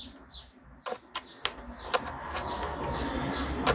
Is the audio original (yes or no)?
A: yes